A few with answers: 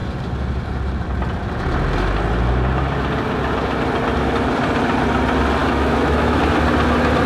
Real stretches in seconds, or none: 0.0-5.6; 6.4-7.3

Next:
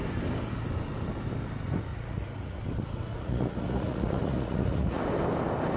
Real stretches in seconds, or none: 0.0-1.9; 2.6-3.1; 5.0-5.8

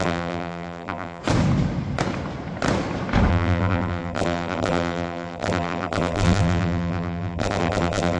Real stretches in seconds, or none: 1.2-3.3

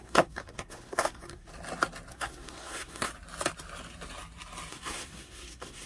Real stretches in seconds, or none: 1.5-2.1; 3.1-4.7

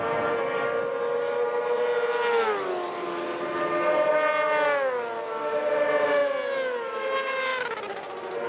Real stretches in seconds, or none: 0.0-8.5

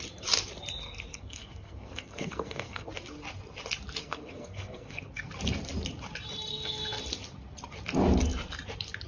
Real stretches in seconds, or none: 0.0-1.1; 2.9-4.0; 5.3-6.5; 7.0-9.1

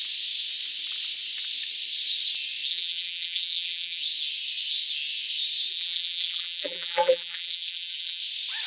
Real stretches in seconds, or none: 0.0-2.7; 4.0-5.7; 8.2-8.7